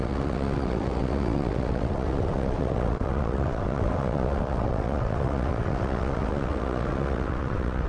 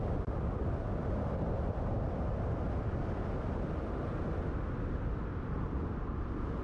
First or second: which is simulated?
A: first